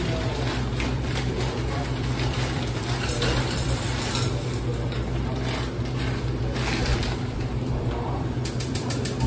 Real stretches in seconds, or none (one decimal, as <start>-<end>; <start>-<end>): 0.0-0.9; 4.4-6.8